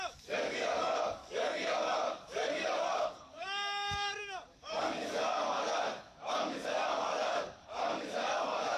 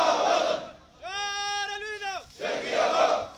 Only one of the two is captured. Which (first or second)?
second